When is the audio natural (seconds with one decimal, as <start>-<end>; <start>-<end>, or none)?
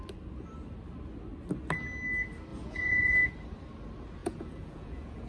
0.0-2.5; 3.3-4.2